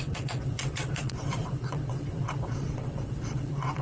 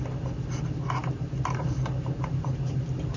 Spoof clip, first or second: first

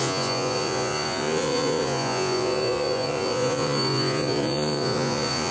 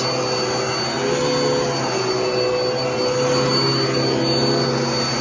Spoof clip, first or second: first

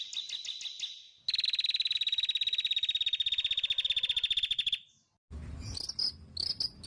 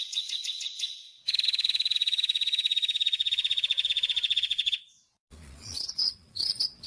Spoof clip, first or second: second